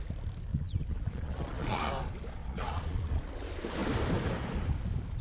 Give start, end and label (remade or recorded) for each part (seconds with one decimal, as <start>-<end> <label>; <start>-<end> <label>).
0.0-0.5 recorded; 0.5-1.9 remade; 1.9-2.4 recorded; 2.4-3.3 remade; 3.3-5.2 recorded